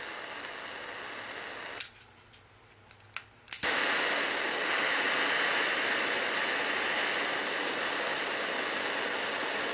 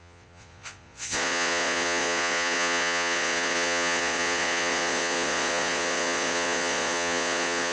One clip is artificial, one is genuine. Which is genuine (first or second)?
first